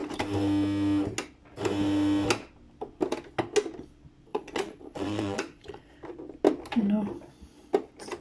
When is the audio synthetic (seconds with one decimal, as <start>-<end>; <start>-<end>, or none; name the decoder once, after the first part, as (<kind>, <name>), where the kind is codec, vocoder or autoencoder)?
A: 4.3-5.9 (vocoder, Vocos)